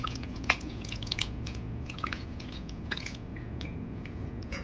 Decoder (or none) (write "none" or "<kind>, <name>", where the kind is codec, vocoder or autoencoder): vocoder, Vocos